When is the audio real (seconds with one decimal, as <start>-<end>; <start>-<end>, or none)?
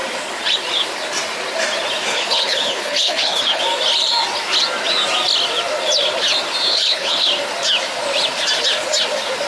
0.0-2.1; 3.6-6.7; 7.3-9.5